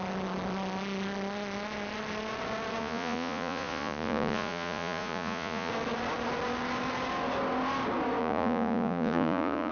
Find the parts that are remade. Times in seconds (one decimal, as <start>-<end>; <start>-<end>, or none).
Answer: 2.8-5.7; 8.2-9.7